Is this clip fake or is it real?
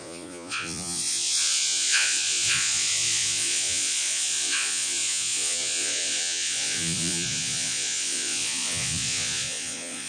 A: fake